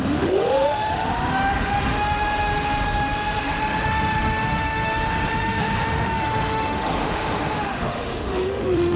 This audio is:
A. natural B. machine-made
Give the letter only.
B